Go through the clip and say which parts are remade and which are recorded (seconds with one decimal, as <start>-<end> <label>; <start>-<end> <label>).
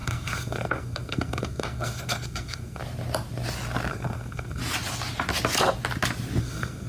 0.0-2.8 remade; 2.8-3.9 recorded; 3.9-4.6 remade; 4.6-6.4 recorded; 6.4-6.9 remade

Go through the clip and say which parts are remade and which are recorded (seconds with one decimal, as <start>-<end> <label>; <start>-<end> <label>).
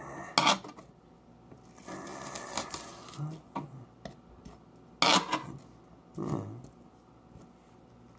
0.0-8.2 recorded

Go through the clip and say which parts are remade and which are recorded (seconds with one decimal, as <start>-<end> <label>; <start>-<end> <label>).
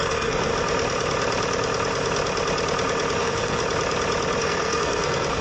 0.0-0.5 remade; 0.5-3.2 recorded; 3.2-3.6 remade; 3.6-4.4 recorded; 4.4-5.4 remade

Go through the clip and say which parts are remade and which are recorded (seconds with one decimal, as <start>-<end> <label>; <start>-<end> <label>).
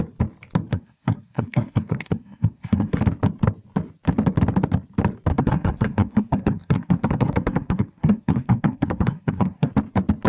0.0-0.7 recorded; 0.7-3.0 remade; 3.0-5.3 recorded; 5.3-9.7 remade; 9.7-10.3 recorded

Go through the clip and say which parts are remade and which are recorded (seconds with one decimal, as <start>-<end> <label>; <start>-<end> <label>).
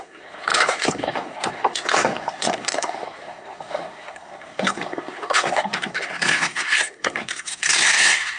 0.0-8.4 remade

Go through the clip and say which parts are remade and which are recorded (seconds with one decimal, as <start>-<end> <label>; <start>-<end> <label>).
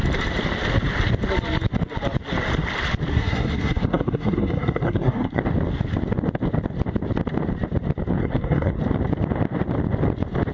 0.0-3.1 recorded; 3.1-5.4 remade; 5.4-8.2 recorded; 8.2-8.8 remade; 8.8-10.5 recorded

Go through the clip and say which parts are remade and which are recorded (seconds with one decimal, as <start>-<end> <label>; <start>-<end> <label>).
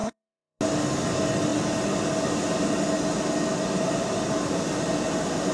0.0-0.6 remade; 0.6-5.5 recorded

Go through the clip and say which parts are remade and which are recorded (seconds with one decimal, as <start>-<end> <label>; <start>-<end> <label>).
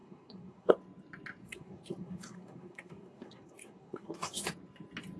0.0-0.7 remade; 0.7-1.4 recorded; 1.4-4.5 remade; 4.5-5.2 recorded